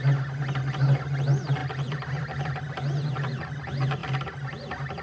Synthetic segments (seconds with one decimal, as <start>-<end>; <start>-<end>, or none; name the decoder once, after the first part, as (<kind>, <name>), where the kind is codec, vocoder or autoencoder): 4.0-5.0 (vocoder, BigVGAN v2)